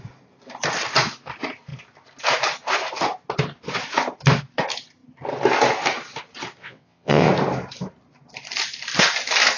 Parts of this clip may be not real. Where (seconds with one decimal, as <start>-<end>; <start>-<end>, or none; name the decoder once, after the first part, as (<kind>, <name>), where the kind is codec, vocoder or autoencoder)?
6.6-7.3 (vocoder, WaveNeXt)